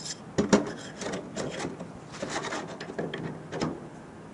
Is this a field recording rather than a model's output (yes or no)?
yes